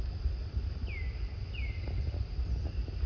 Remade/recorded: recorded